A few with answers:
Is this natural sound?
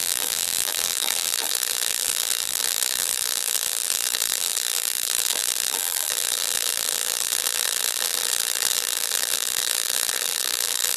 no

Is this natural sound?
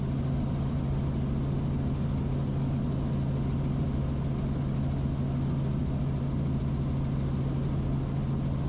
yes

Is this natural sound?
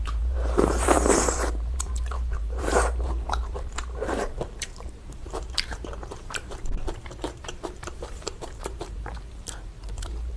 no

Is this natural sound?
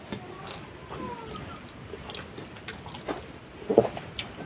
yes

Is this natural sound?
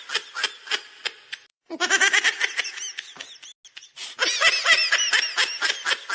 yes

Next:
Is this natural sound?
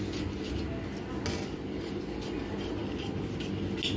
yes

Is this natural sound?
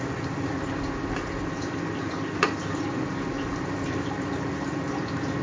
no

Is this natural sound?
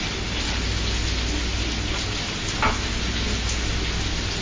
yes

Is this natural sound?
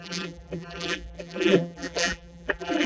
no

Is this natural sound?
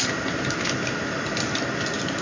yes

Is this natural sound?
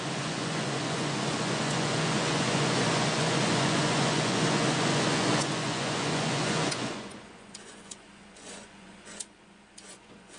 no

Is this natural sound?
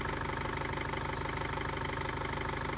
yes